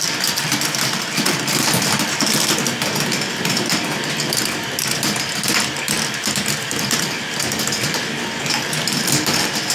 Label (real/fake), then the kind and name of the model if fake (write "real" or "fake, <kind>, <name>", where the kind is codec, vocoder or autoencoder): fake, vocoder, BigVGAN v2